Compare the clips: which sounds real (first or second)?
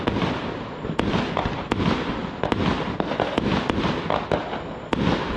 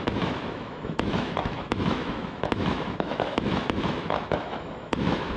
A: first